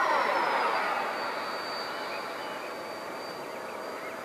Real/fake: real